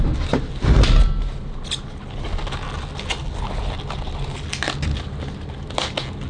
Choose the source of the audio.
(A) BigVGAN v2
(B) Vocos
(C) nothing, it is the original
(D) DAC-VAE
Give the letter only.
C